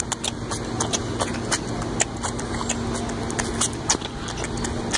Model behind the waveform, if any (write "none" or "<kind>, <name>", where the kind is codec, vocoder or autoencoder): none